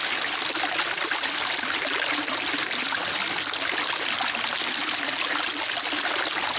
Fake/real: real